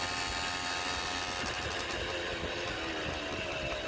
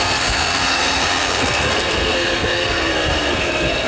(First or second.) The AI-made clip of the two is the second